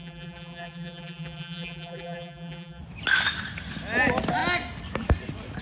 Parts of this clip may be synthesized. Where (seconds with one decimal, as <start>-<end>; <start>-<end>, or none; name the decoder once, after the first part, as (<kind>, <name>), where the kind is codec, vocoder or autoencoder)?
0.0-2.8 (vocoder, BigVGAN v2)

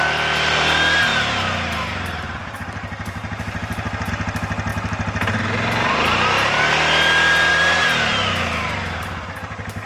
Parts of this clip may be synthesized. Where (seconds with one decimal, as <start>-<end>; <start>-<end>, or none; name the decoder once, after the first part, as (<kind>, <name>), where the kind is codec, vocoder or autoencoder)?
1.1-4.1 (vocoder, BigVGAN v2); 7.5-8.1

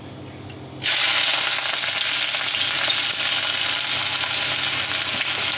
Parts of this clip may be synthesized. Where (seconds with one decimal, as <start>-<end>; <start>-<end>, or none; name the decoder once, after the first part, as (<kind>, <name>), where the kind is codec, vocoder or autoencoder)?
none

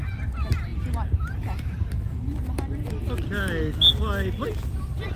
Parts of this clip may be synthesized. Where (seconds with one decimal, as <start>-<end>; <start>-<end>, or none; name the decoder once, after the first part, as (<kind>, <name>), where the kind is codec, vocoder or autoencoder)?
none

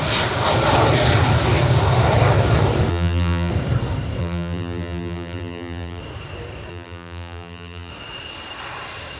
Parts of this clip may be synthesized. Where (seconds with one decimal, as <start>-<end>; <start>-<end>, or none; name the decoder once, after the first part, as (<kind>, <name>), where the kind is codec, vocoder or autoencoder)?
2.9-3.5 (vocoder, BigVGAN v2); 4.2-6.0; 6.7-7.9

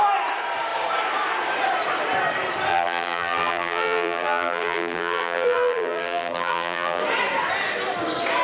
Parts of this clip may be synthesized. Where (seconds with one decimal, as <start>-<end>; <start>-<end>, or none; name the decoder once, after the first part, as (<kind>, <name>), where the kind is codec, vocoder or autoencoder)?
2.7-7.0 (vocoder, BigVGAN v2)

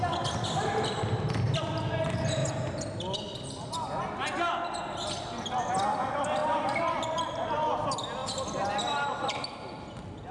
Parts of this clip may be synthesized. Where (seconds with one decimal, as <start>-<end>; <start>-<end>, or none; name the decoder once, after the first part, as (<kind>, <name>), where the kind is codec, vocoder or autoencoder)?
6.4-7.0 (vocoder, BigVGAN v2); 8.2-9.8

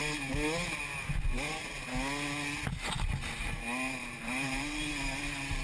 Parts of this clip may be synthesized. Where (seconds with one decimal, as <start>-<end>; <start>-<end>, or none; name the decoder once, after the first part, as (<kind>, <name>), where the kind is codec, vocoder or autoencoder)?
4.0-4.9 (vocoder, BigVGAN v2)